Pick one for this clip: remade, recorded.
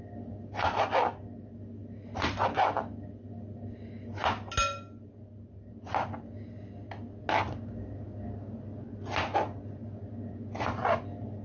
recorded